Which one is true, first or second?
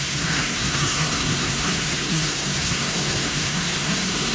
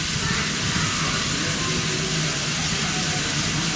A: second